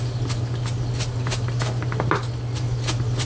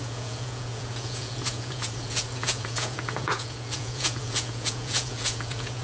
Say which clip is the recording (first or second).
first